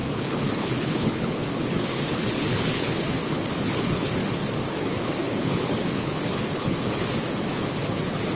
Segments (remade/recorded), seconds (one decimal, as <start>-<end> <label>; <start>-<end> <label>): 0.0-4.2 remade; 4.2-4.7 recorded; 4.7-8.3 remade